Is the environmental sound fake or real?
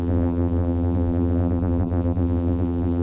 fake